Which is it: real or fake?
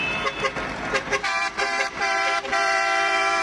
fake